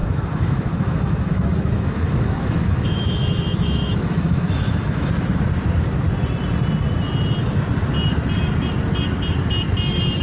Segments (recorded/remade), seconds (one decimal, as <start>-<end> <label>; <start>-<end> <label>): 0.0-5.1 remade; 5.1-10.2 recorded